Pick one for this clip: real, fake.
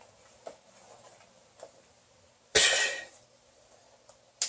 real